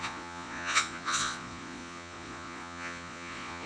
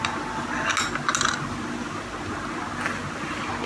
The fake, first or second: first